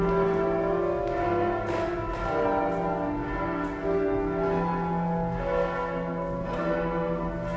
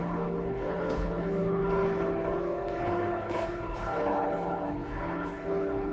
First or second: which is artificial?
second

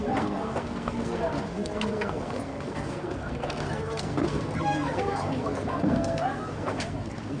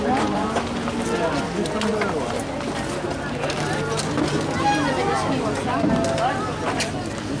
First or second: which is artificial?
first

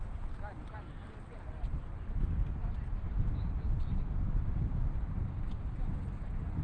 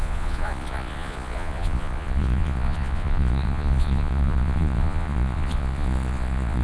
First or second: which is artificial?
second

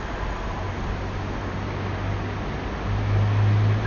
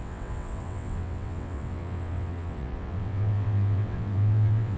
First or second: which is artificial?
second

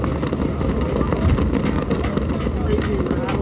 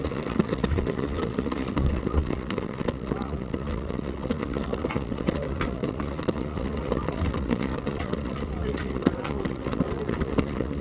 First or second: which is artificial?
second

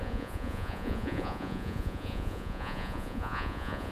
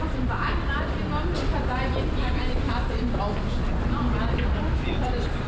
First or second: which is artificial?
first